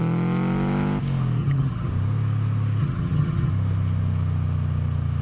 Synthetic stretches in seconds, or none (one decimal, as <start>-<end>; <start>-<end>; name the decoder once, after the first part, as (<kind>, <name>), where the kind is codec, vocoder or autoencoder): 1.4-1.9 (vocoder, HiFi-GAN); 2.8-3.5